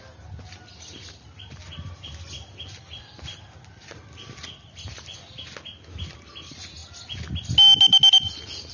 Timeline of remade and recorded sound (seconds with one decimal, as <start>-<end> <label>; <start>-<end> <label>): 0.0-8.7 recorded